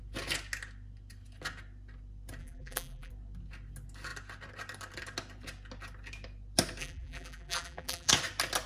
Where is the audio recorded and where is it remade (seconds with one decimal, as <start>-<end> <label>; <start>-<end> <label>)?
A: 0.0-2.4 recorded; 2.4-3.1 remade; 3.1-6.8 recorded; 6.8-8.1 remade; 8.1-8.7 recorded